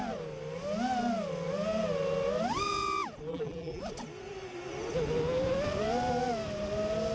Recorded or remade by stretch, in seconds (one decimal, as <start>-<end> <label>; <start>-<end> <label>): 0.0-3.3 recorded; 3.3-3.8 remade; 3.8-7.1 recorded